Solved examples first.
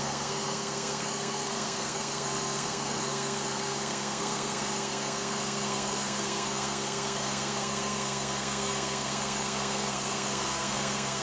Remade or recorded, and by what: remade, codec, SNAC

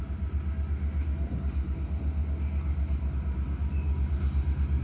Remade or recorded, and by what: recorded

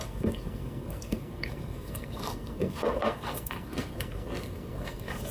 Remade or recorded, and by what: remade, codec, SNAC